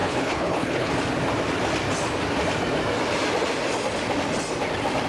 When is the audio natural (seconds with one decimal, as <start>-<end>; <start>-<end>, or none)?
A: 0.9-5.1